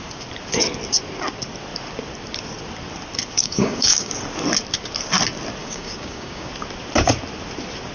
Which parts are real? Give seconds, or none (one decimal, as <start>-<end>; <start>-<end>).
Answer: 0.0-3.4; 4.1-5.6; 6.5-7.9

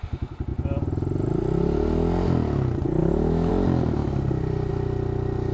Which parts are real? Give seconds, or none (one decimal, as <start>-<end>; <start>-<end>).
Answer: 0.0-3.0; 3.5-5.5